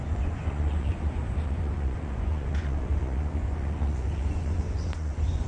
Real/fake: fake